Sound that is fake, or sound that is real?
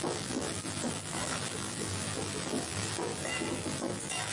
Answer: fake